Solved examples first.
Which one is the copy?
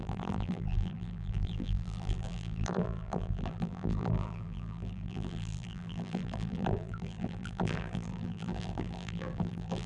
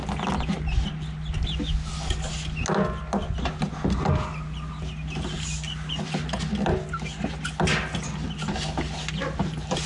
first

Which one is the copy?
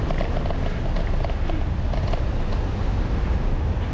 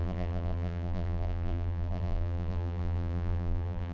second